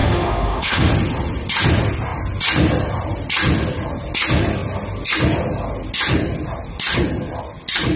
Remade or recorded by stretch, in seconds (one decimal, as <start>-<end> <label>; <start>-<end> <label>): 0.0-0.9 remade; 0.9-8.0 recorded